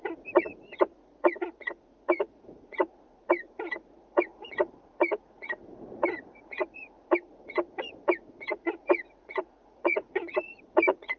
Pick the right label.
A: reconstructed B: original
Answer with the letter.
A